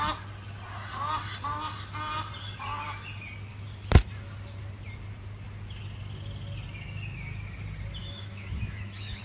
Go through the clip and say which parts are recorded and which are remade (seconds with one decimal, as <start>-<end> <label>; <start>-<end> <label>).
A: 0.0-8.0 recorded; 8.0-9.2 remade